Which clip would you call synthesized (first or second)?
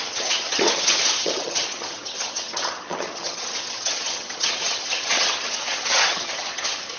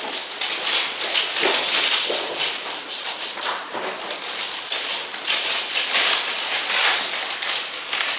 first